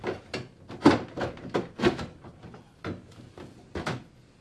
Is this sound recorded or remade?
recorded